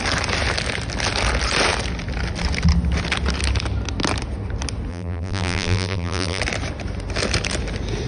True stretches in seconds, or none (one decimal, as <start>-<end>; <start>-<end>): 0.0-4.9; 6.4-8.1